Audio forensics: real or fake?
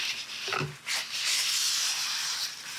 real